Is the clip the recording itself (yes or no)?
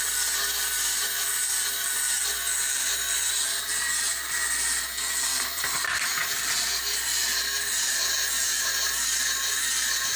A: yes